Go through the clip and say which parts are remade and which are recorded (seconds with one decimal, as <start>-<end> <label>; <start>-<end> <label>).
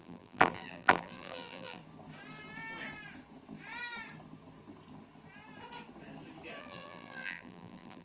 0.0-1.8 remade; 1.8-6.6 recorded; 6.6-8.0 remade